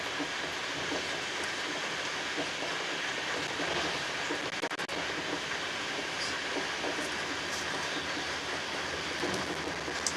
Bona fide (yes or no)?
yes